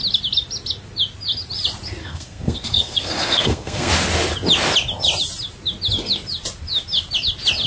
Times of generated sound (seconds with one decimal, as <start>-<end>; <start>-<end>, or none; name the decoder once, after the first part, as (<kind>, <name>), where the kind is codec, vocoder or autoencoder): 2.0-3.9 (codec, SNAC)